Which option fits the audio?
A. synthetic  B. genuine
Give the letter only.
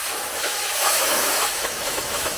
A